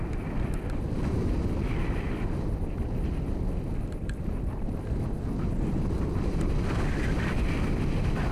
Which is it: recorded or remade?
recorded